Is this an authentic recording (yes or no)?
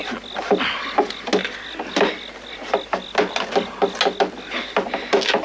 yes